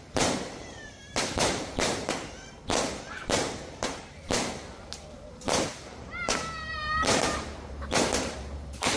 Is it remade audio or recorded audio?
remade